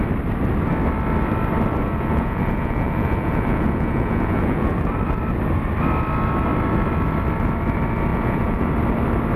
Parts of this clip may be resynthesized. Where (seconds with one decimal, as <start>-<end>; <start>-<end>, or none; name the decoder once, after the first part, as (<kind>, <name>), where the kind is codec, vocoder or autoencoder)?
1.8-4.7 (vocoder, Vocos); 8.1-8.7